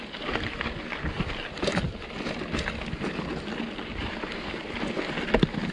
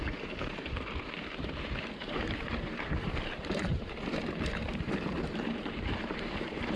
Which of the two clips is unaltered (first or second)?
first